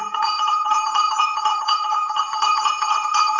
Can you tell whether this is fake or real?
fake